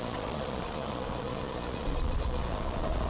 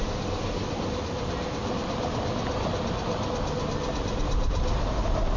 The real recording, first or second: second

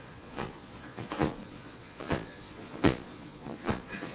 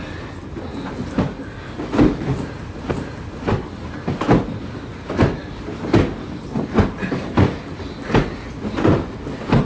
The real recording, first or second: second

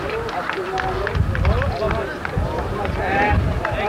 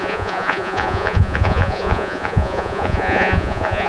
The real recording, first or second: first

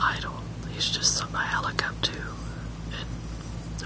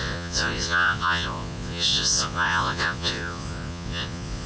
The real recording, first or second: first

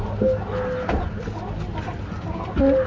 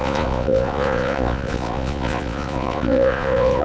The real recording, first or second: first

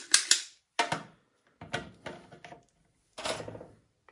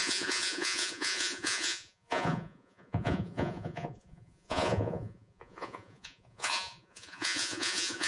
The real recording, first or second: first